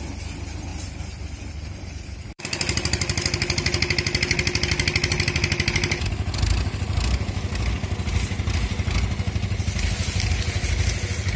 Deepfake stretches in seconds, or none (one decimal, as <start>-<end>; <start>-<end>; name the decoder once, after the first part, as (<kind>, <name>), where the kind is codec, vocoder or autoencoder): 0.7-2.4 (vocoder, BigVGAN v2)